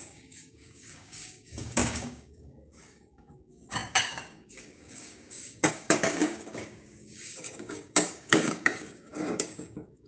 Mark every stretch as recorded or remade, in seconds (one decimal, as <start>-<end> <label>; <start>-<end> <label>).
0.0-10.1 remade